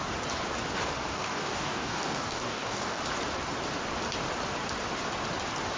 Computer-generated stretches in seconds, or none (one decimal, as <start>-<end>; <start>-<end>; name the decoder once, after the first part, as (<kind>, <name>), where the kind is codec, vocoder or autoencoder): 1.1-3.0 (codec, DAC)